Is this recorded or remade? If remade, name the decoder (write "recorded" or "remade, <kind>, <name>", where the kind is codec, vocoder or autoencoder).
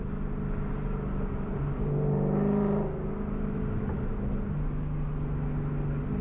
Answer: recorded